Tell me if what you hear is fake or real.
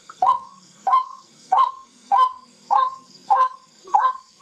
fake